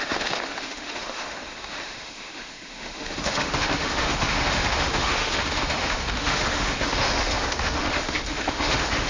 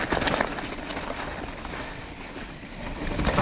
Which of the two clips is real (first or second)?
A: second